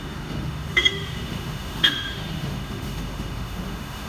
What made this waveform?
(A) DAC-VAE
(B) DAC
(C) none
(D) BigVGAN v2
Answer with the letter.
A